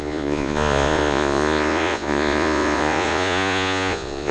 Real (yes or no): no